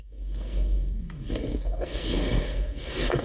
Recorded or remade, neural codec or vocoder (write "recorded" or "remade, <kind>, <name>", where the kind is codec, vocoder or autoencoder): remade, codec, SNAC